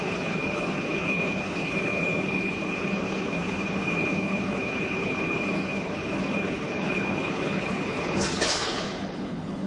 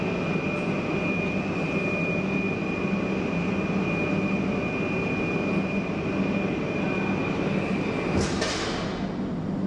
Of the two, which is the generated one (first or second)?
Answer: first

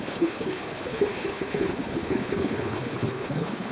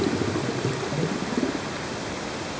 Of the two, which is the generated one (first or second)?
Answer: first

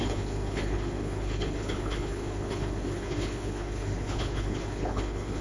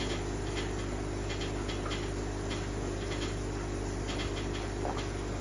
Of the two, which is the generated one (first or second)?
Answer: first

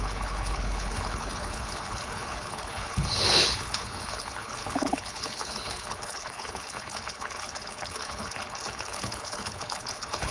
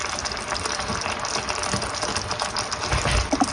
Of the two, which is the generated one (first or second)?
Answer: first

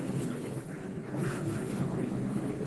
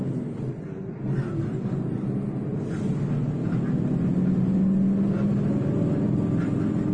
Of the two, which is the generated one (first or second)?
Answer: first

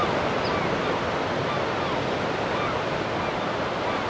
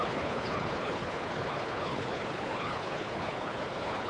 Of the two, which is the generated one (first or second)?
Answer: second